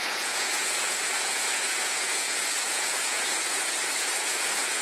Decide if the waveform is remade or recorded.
remade